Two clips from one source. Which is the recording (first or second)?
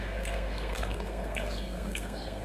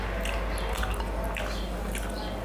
second